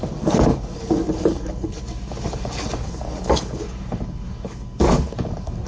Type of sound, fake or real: fake